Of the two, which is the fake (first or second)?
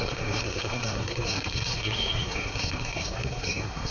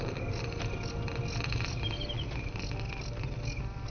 first